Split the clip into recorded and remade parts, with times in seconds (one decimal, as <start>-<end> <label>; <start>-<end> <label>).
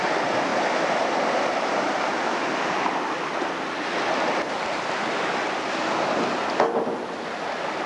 0.0-7.9 recorded